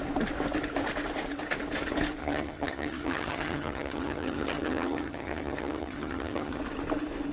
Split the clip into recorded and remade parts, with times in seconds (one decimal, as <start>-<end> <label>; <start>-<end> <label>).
0.0-2.2 recorded; 2.2-6.6 remade; 6.6-7.3 recorded